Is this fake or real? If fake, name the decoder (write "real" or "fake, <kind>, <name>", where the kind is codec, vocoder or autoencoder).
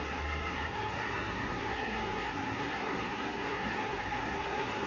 fake, codec, SNAC